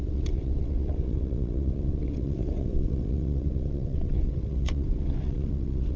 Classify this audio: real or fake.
fake